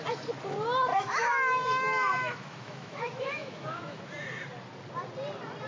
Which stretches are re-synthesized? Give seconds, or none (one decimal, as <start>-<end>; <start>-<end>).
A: 0.9-4.0